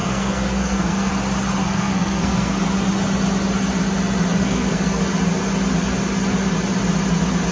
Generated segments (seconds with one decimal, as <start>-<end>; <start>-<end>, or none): 0.0-1.1; 1.6-2.5; 4.4-5.0